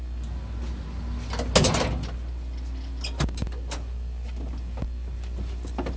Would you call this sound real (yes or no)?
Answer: yes